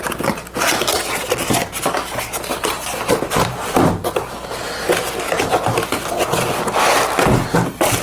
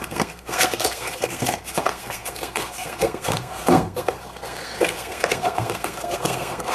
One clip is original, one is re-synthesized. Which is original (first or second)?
first